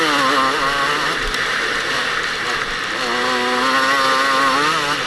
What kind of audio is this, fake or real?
real